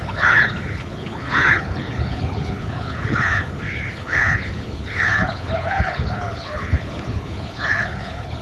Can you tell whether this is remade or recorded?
remade